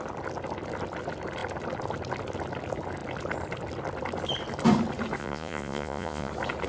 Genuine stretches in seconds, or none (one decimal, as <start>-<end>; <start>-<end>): 0.0-5.2; 6.3-6.7